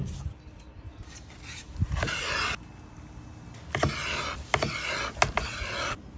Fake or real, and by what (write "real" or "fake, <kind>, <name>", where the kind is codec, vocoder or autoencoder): real